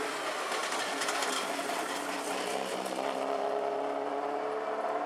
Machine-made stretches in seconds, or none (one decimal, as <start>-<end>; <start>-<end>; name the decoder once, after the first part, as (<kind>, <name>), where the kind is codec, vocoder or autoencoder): none

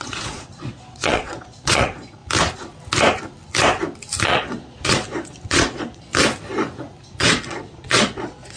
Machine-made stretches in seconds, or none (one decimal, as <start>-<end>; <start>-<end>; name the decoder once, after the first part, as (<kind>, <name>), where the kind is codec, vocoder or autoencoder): 0.0-2.2 (vocoder, Vocos); 4.2-6.1; 7.2-8.6

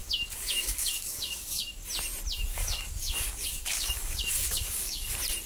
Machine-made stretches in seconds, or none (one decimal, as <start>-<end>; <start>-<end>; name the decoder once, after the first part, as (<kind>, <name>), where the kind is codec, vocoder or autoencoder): 0.0-1.8 (codec, DAC); 2.5-5.1

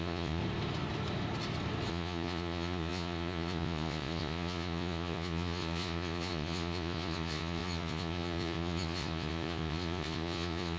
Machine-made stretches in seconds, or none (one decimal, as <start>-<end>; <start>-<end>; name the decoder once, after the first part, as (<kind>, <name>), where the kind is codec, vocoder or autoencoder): 0.0-0.4 (vocoder, Vocos); 1.9-10.8

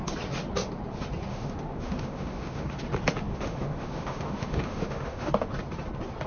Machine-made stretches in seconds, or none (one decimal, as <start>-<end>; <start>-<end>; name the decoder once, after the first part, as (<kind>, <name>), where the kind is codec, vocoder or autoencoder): 1.3-2.8 (autoencoder, DAC-VAE); 3.3-5.3

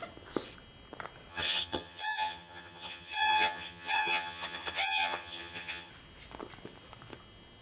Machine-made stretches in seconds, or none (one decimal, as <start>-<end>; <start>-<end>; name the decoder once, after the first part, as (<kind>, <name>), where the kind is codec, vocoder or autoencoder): 1.3-5.9 (vocoder, HiFi-GAN)